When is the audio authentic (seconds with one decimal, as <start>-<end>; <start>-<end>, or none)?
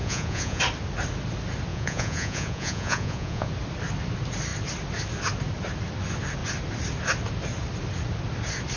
0.6-1.7; 3.5-8.8